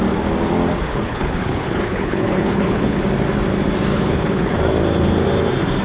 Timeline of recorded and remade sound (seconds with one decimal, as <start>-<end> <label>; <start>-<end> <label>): 0.0-0.9 recorded; 0.9-3.0 remade; 3.0-3.9 recorded; 3.9-4.6 remade; 4.6-5.8 recorded